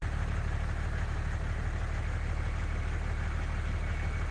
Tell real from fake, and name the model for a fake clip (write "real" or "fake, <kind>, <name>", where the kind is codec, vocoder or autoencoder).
real